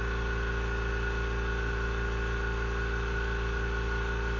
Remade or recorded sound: recorded